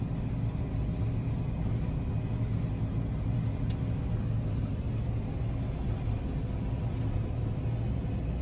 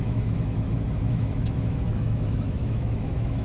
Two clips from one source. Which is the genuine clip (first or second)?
first